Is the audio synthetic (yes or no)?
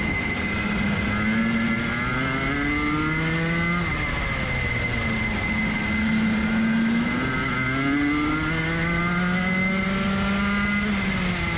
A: no